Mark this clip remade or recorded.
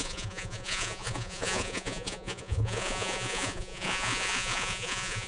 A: remade